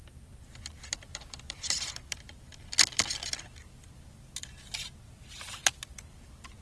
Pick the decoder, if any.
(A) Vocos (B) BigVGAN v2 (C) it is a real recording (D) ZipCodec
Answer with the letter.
B